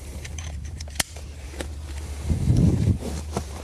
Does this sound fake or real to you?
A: fake